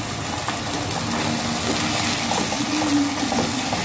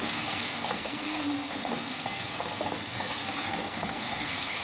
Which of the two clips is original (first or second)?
first